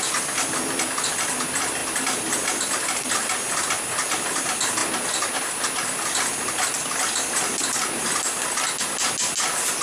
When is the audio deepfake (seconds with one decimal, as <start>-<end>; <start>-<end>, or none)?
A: none